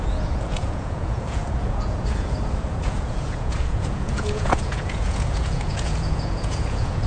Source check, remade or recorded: remade